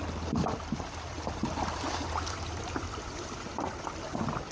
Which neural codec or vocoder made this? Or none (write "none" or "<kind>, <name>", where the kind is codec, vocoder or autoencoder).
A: none